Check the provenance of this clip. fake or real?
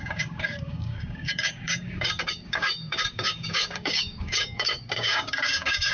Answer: fake